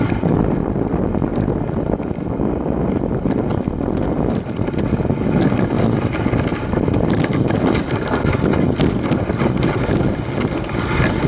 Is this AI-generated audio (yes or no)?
no